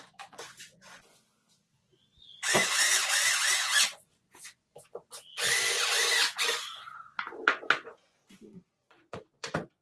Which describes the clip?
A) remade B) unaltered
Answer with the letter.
A